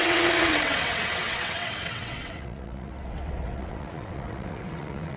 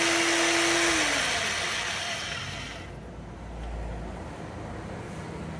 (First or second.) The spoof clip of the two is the first